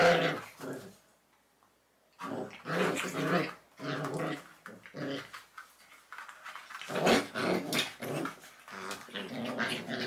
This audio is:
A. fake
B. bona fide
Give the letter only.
B